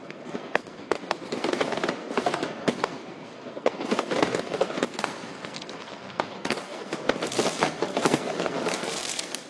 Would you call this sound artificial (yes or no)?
yes